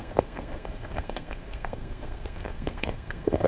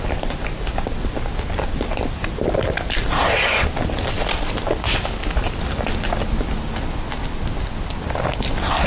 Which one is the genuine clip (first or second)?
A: second